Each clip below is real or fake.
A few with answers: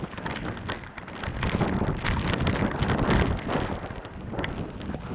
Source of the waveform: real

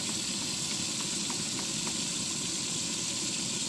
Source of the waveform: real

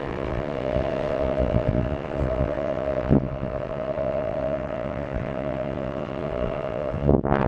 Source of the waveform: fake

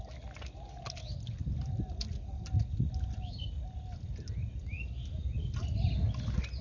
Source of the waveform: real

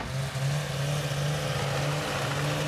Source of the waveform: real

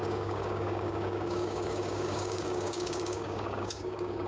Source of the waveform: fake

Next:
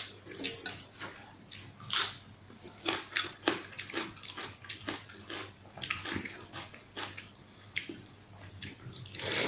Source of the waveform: real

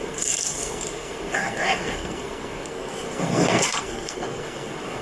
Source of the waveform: fake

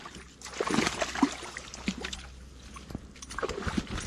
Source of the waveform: real